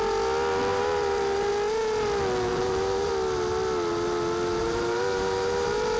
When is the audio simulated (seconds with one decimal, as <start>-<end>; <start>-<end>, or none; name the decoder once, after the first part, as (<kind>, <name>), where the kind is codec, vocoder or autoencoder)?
0.7-1.5 (vocoder, BigVGAN v2); 2.5-3.1; 4.6-6.0